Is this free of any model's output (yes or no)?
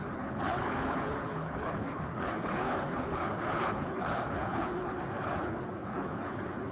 no